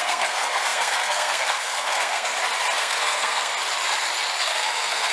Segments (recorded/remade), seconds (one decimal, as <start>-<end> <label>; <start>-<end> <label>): 0.0-2.3 remade; 2.3-2.8 recorded; 2.8-3.5 remade; 3.5-4.4 recorded; 4.4-5.1 remade